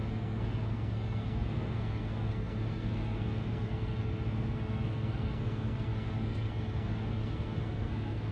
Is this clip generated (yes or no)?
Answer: yes